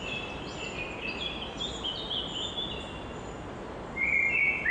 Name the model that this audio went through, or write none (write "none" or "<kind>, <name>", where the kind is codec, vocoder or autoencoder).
none